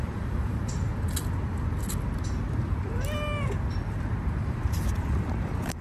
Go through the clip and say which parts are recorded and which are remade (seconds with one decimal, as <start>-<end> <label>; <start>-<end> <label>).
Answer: 0.0-0.9 remade; 0.9-4.3 recorded; 4.3-5.8 remade